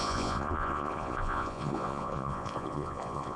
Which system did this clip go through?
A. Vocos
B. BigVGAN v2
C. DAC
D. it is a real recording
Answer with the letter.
A